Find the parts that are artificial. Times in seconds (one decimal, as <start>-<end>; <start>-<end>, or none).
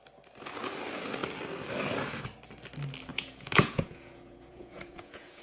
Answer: 3.1-5.4